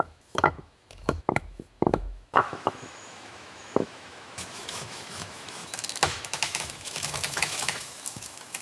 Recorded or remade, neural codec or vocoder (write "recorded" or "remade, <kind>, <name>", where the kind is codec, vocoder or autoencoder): remade, autoencoder, DAC-VAE